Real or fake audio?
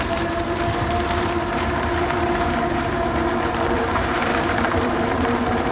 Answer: fake